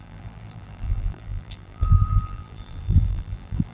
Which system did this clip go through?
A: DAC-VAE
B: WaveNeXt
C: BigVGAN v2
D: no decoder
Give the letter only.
C